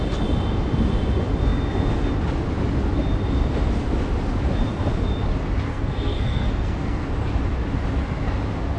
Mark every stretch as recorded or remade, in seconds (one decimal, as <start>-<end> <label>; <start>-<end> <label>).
0.0-5.7 recorded; 5.7-7.0 remade; 7.0-8.8 recorded